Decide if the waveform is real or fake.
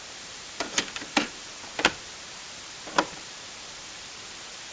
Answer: fake